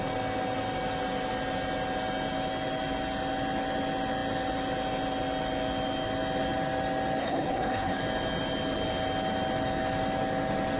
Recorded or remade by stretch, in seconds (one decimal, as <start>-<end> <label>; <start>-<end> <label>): 0.0-7.2 recorded; 7.2-8.0 remade; 8.0-10.8 recorded